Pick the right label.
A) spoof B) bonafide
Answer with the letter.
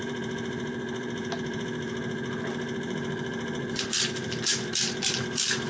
A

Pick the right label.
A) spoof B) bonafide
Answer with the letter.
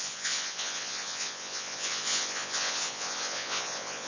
A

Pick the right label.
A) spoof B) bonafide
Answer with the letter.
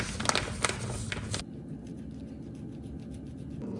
B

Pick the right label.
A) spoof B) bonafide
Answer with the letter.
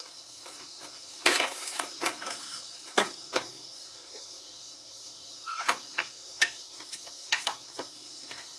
A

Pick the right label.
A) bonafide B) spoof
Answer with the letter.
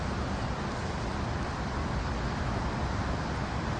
A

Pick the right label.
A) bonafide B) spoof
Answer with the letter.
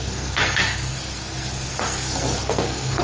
B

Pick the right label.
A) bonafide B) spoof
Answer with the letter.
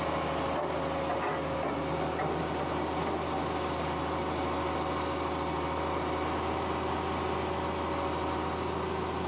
A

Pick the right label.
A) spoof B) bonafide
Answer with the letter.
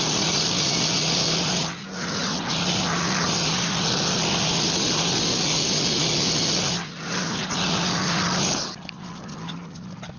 B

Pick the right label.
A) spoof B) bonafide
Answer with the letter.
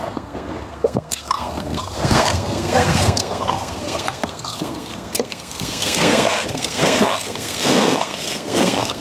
A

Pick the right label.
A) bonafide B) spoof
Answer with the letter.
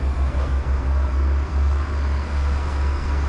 B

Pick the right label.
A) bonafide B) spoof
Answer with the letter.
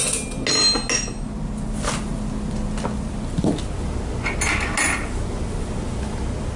A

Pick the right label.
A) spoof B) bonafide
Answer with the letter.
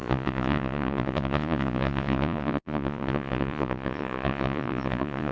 A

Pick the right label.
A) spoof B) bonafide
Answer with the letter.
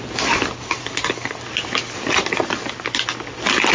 B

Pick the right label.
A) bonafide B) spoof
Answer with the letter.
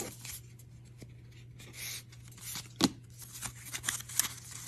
A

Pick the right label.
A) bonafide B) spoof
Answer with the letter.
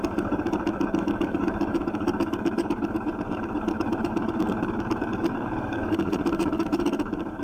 B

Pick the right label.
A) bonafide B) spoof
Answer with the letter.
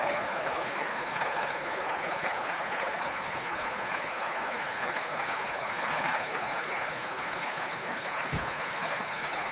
B